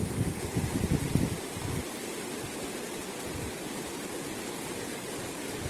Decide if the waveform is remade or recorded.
recorded